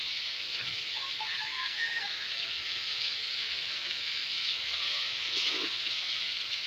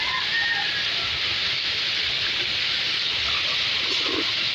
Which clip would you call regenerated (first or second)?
first